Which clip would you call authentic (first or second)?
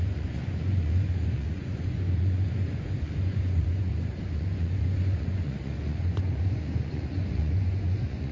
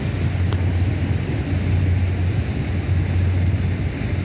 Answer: second